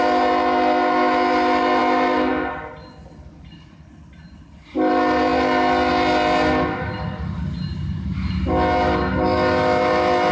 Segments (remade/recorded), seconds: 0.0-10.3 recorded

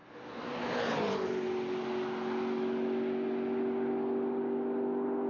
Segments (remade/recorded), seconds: 0.0-5.3 recorded

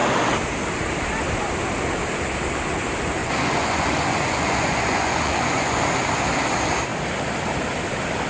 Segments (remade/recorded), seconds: 0.0-3.2 recorded; 3.2-5.8 remade; 5.8-8.3 recorded

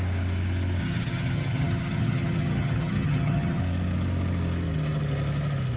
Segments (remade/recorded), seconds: 0.0-0.8 recorded; 0.8-3.6 remade; 3.6-5.8 recorded

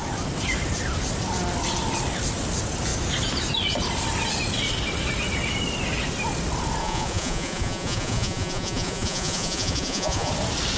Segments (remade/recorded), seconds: 0.0-6.8 recorded; 6.8-10.3 remade; 10.3-10.8 recorded